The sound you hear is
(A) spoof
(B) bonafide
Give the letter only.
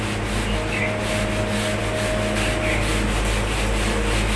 B